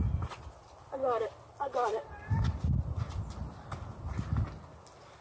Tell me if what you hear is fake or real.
real